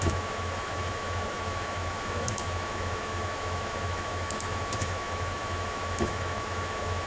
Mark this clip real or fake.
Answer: fake